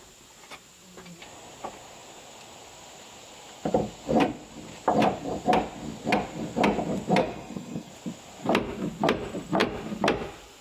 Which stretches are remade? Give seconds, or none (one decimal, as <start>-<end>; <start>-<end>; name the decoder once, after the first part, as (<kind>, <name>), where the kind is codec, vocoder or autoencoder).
7.2-7.9 (codec, SNAC)